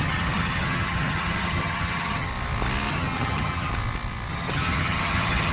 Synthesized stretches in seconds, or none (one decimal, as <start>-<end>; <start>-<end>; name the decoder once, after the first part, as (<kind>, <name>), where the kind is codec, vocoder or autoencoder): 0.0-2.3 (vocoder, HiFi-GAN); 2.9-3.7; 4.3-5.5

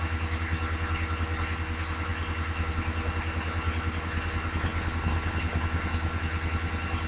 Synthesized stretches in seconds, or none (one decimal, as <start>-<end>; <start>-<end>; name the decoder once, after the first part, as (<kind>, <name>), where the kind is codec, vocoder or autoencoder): none

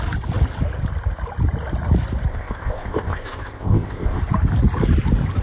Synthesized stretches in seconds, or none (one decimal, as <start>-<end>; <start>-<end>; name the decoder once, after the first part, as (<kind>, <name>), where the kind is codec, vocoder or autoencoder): 2.3-4.2 (codec, ZipCodec)

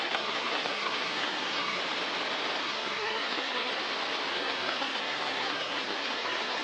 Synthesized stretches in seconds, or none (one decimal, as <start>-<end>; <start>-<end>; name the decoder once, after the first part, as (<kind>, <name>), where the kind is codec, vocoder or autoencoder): 0.0-1.8 (codec, SNAC); 2.6-3.7; 4.3-6.6

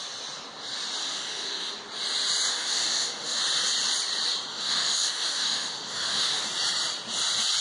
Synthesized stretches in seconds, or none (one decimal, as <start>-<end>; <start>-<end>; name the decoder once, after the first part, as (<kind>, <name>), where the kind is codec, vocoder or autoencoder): 1.0-1.7 (autoencoder, DAC-VAE); 2.5-3.4; 4.5-6.4

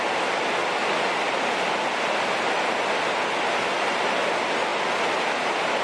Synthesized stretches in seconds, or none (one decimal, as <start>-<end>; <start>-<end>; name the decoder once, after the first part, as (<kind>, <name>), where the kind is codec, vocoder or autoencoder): none

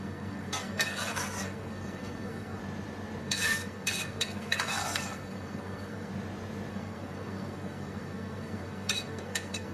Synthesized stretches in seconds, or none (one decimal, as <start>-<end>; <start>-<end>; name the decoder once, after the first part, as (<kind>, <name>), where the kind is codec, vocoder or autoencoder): 0.0-2.6 (codec, SNAC); 3.2-6.1; 6.7-9.7

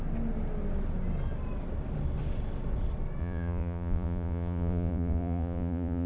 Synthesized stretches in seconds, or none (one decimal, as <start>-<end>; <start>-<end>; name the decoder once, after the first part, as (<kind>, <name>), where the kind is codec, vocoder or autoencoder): 3.2-6.1 (vocoder, Vocos)